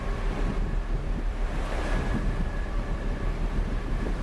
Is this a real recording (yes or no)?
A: no